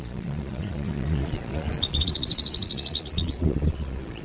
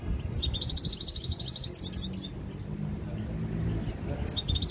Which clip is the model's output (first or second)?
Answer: first